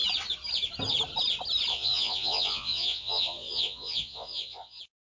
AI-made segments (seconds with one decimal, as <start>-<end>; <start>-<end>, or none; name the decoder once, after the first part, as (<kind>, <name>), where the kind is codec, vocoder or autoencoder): 1.7-4.8 (vocoder, Vocos)